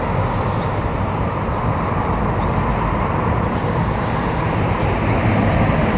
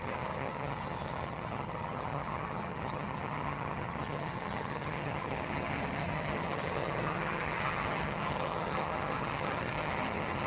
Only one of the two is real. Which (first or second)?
first